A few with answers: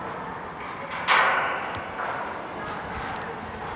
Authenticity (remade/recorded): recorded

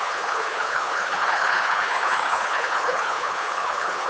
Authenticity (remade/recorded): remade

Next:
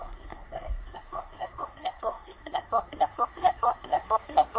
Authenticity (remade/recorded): remade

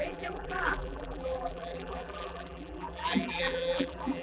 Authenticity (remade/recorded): remade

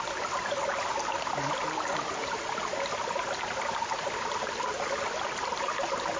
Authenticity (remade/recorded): recorded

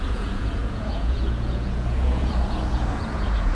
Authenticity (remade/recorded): remade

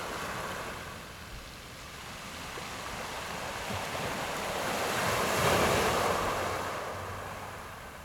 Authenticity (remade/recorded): recorded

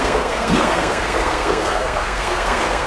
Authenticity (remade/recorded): remade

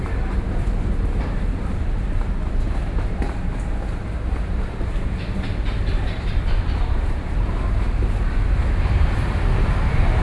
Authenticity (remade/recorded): remade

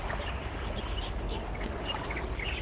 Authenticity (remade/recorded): recorded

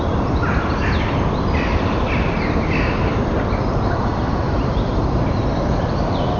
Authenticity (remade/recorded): recorded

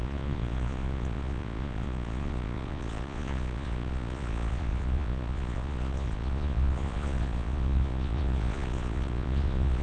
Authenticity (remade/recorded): remade